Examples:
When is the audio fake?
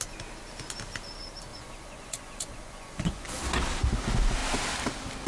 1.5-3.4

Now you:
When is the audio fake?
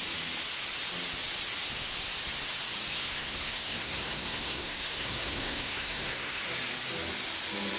2.9-6.4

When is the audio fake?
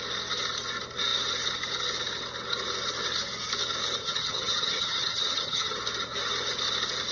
4.0-5.8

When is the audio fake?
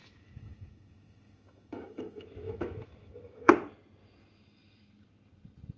0.0-3.5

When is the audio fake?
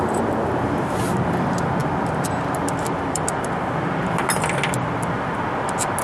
none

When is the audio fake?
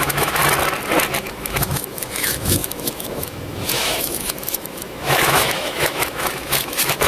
0.0-0.4; 1.2-7.1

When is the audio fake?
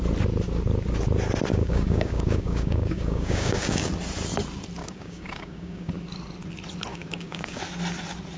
1.5-3.9; 4.8-5.9; 6.9-7.6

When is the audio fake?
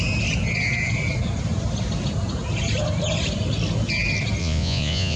4.4-5.2